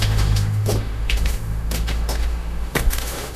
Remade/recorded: remade